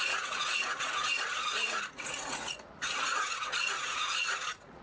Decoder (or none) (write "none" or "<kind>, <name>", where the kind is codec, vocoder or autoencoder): vocoder, Vocos